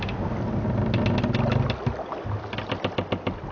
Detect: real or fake real